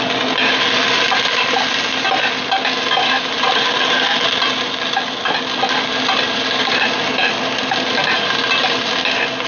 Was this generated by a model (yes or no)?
no